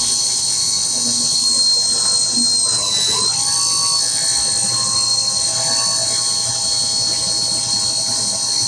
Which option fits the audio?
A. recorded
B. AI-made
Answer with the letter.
A